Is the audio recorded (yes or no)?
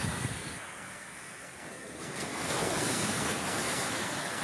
no